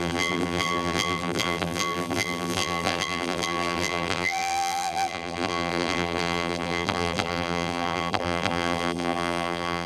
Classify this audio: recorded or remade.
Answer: remade